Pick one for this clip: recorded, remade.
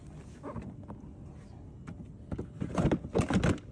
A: recorded